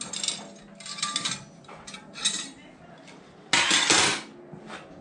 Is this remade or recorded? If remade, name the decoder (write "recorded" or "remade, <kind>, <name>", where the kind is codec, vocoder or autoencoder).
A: recorded